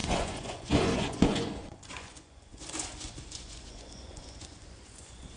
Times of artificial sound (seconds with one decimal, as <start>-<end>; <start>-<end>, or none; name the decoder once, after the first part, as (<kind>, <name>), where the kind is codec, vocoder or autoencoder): 0.0-5.4 (vocoder, Vocos)